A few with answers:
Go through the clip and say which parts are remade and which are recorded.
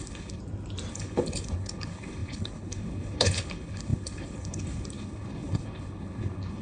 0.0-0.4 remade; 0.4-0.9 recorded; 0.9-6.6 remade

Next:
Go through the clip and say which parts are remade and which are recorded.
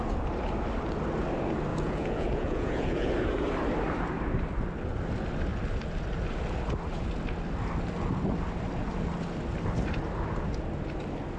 0.0-1.7 recorded; 1.7-3.1 remade; 3.1-11.4 recorded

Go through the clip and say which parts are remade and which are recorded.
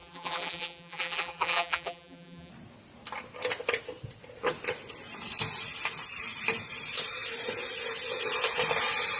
0.0-2.5 remade; 2.5-9.2 recorded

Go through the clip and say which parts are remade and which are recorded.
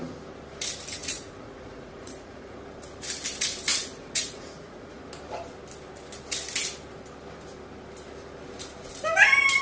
0.0-1.0 recorded; 1.0-2.6 remade; 2.6-3.7 recorded; 3.7-5.0 remade; 5.0-9.6 recorded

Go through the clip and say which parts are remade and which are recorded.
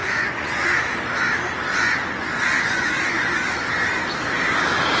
0.0-0.8 remade; 0.8-1.7 recorded; 1.7-3.3 remade; 3.3-5.0 recorded